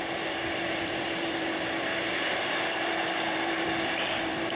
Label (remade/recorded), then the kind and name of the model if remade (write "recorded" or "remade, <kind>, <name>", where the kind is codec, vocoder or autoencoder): remade, vocoder, BigVGAN v2